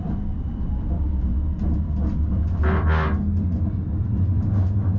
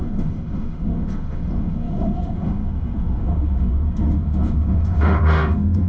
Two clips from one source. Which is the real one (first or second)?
first